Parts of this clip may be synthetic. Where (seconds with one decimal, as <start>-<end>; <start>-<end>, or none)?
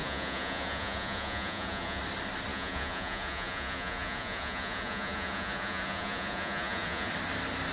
0.0-2.0; 2.5-7.1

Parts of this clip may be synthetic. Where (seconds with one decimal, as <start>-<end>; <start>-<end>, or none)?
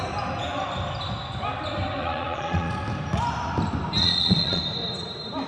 2.0-2.7; 4.0-4.6